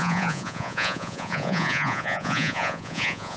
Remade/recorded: remade